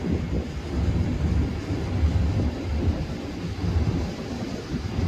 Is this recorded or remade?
recorded